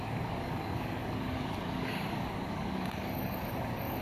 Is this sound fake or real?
fake